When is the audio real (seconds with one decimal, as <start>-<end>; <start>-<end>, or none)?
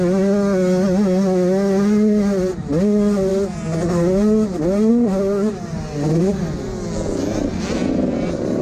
0.0-8.6